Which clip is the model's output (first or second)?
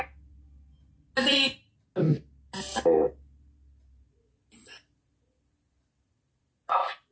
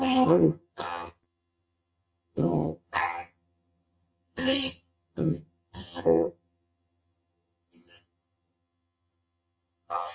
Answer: second